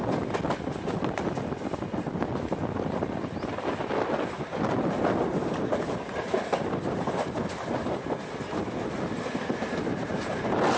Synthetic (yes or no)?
no